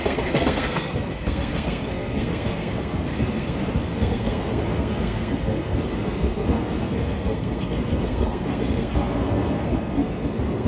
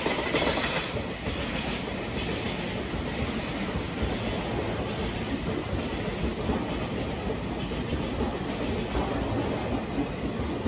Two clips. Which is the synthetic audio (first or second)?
first